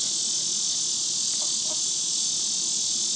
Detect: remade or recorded recorded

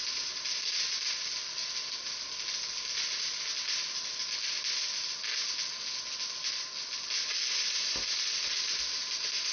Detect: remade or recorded recorded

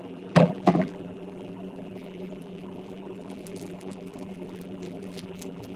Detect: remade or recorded remade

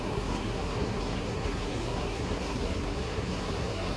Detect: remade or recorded remade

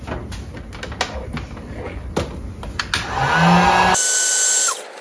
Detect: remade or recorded recorded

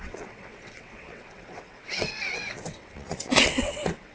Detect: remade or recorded remade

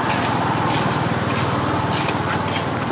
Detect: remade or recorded recorded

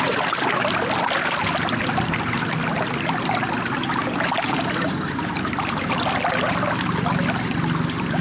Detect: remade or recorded recorded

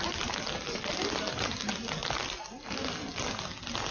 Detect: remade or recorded recorded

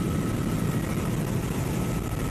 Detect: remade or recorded recorded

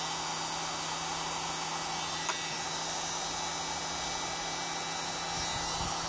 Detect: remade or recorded recorded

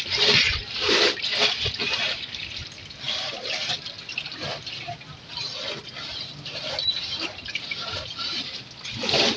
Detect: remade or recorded remade